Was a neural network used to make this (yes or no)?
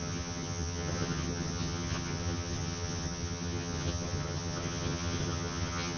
yes